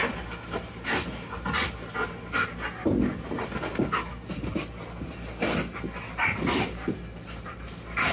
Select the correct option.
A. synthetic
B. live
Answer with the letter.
B